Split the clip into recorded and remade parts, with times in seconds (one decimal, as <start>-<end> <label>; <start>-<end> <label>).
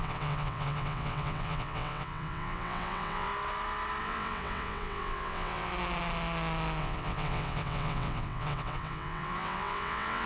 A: 0.0-3.3 remade; 3.3-4.0 recorded; 4.0-5.7 remade; 5.7-6.8 recorded; 6.8-10.3 remade